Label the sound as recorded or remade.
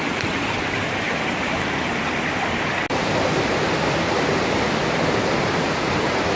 remade